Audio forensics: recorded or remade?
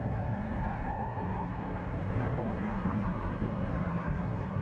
remade